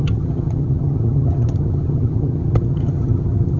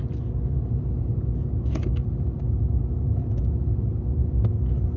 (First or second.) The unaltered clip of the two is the second